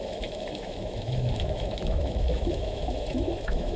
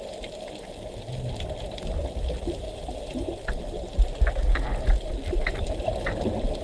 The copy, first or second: first